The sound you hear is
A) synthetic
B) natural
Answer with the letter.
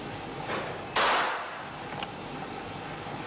B